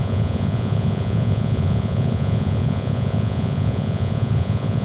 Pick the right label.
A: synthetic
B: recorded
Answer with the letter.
A